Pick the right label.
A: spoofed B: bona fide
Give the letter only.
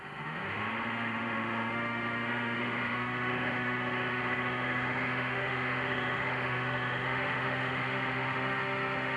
A